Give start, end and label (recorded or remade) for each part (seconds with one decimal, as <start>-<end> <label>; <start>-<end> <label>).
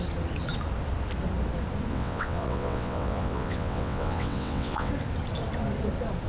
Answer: 0.0-1.9 recorded; 1.9-4.9 remade; 4.9-6.3 recorded